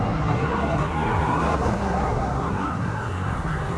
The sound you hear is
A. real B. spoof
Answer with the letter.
B